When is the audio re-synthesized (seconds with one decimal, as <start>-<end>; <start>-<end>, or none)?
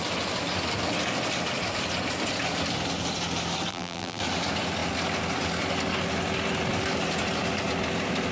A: 3.7-4.2